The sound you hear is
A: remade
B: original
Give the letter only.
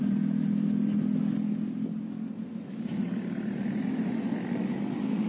B